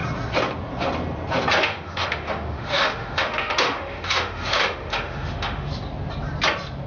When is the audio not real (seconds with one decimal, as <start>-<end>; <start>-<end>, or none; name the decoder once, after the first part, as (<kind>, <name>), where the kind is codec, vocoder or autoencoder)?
1.6-5.7 (autoencoder, DAC-VAE)